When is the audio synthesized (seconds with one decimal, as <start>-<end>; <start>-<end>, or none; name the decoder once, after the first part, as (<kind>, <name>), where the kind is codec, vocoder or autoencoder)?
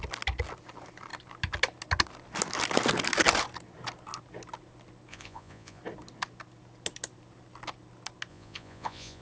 5.1-5.8 (vocoder, Vocos); 8.3-9.2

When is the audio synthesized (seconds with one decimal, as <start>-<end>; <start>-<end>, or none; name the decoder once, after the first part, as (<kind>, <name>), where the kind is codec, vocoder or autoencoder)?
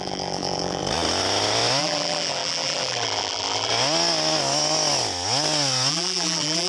0.0-0.8 (vocoder, BigVGAN v2); 1.8-3.7; 5.9-6.7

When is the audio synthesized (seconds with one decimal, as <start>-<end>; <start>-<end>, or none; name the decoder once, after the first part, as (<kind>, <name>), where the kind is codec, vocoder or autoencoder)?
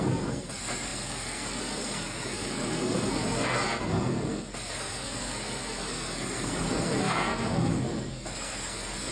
0.0-9.1 (codec, SNAC)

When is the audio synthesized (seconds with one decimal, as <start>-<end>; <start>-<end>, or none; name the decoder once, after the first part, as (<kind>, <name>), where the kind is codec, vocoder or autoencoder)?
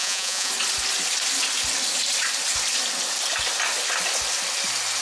0.0-0.5 (vocoder, Vocos)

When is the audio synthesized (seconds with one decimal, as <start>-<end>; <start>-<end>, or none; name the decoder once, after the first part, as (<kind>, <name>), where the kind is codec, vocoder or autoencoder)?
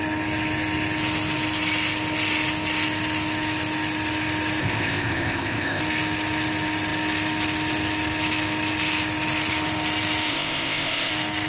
4.6-5.8 (codec, ZipCodec); 10.3-11.1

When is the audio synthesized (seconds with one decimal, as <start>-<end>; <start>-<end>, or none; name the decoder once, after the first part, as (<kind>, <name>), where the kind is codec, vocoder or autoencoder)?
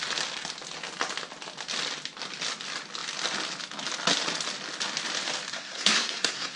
5.5-6.6 (codec, SNAC)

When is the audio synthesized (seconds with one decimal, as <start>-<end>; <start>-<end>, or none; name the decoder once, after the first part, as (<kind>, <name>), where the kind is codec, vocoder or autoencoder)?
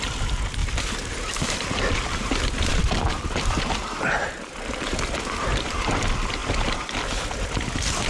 0.6-1.9 (vocoder, BigVGAN v2)